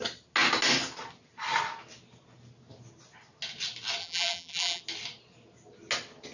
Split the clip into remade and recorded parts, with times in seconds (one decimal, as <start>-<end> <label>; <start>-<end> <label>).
0.0-4.0 recorded; 4.0-4.8 remade; 4.8-6.3 recorded